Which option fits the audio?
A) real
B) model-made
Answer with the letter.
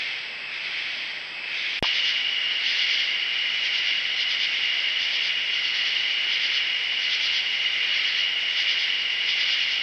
A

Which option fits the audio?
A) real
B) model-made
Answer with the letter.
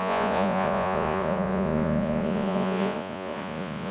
B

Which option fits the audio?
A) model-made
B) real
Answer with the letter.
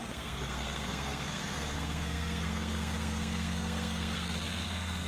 A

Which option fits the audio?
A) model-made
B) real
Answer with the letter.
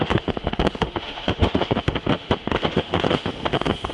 A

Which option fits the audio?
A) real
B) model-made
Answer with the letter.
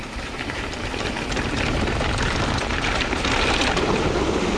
B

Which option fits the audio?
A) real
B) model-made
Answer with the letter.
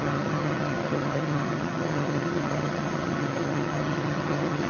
B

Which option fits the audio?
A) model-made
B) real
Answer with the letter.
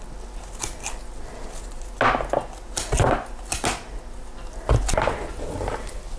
B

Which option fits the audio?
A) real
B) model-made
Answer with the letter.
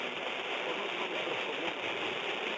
A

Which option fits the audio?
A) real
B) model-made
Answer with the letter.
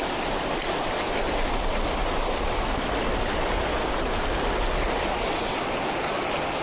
A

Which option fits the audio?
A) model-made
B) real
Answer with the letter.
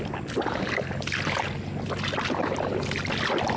B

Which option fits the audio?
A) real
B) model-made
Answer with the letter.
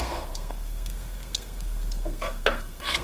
B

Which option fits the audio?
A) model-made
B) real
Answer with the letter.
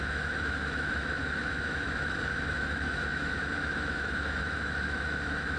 A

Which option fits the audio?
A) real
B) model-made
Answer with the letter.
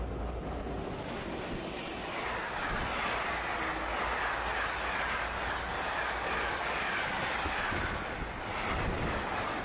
A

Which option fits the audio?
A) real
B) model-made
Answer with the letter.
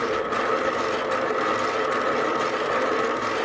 A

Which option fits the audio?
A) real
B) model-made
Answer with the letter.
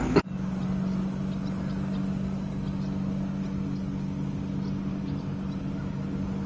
A